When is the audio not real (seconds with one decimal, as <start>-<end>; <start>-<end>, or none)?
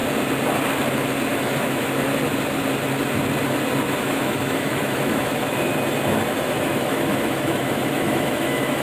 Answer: 1.3-2.1; 4.0-5.7; 6.4-8.8